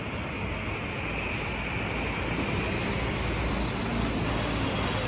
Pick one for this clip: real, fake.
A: real